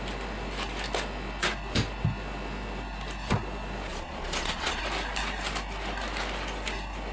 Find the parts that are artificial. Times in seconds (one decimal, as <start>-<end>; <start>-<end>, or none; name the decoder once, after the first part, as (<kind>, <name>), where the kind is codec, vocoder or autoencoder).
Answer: 3.9-4.8 (vocoder, Vocos)